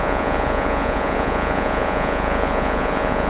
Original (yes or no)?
no